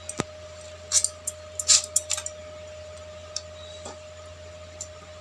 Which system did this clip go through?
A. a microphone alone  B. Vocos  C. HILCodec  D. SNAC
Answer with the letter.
A